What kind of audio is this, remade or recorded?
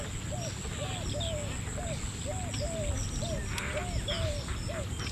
recorded